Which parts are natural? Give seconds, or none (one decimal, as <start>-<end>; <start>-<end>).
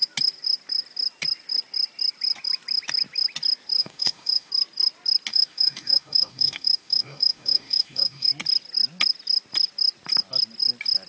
0.0-3.8; 4.5-5.3; 8.3-11.1